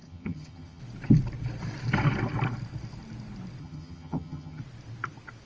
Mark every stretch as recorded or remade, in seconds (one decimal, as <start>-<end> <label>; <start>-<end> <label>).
0.0-0.8 remade; 0.8-3.6 recorded; 3.6-4.6 remade; 4.6-5.5 recorded